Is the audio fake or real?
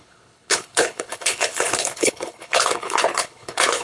fake